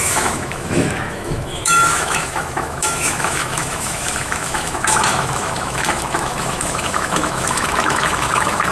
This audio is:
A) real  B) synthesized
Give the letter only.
B